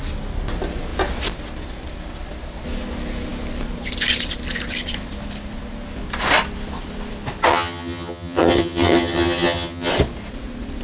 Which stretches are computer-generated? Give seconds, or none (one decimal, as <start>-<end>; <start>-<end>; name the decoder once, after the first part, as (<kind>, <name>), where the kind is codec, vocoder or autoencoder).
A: 7.5-9.9 (vocoder, HiFi-GAN)